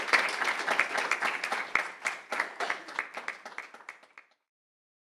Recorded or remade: recorded